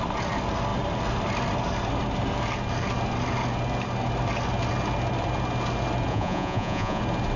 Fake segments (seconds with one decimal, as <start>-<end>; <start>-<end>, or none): 6.1-7.0